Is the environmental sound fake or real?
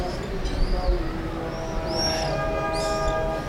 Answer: real